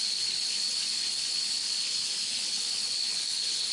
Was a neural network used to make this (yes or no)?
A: yes